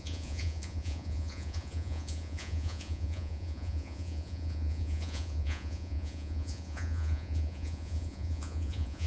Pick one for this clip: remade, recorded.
remade